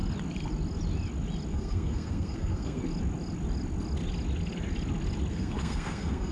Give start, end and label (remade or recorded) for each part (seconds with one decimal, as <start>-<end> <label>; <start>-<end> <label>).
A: 0.0-1.5 recorded; 1.5-2.8 remade; 2.8-5.3 recorded; 5.3-6.3 remade